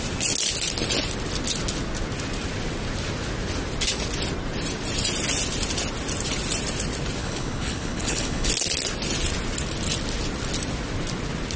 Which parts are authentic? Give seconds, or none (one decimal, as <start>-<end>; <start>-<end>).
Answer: 0.0-7.2; 8.5-11.6